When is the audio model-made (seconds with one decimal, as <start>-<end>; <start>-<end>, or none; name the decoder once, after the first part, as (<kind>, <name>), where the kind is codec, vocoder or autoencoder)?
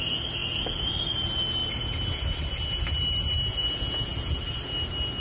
none